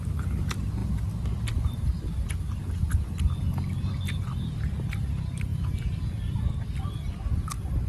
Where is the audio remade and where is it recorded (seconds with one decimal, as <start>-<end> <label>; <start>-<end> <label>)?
0.0-7.9 recorded